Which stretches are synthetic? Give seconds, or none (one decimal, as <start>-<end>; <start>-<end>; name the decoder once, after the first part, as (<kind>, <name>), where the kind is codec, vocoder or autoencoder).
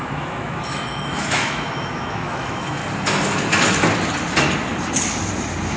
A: 0.0-2.8 (autoencoder, DAC-VAE)